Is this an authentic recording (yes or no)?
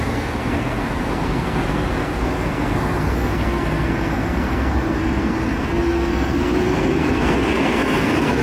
no